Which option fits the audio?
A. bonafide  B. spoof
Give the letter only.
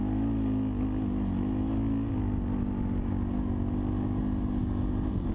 A